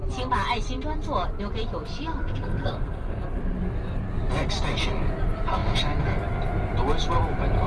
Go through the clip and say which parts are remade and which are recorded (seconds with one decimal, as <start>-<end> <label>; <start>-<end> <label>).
0.0-2.2 recorded; 2.2-3.2 remade; 3.2-7.7 recorded